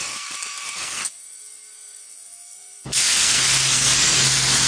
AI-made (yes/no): yes